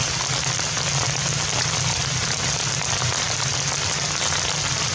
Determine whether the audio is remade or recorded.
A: recorded